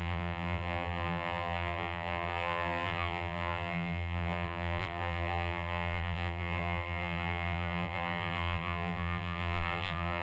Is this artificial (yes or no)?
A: yes